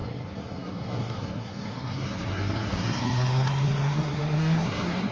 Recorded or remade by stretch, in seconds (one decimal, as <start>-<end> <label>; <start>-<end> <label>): 0.0-5.1 remade

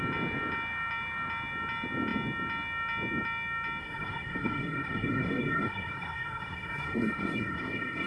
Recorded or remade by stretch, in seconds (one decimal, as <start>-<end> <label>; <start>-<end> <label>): 0.0-3.8 recorded; 3.8-8.1 remade

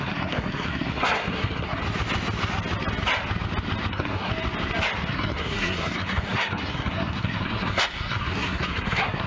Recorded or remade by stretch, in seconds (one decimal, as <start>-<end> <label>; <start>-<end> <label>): 0.0-1.8 remade; 1.8-3.9 recorded; 3.9-4.3 remade; 4.3-5.1 recorded; 5.1-9.3 remade

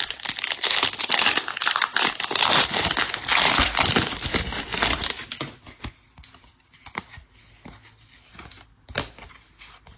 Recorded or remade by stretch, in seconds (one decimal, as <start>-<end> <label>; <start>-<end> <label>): 0.0-10.0 recorded